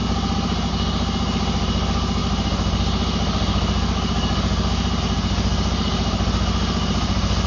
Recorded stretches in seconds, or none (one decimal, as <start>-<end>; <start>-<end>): 0.0-7.5